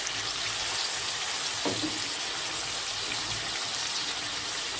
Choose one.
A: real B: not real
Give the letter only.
A